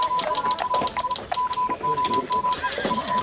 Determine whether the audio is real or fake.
real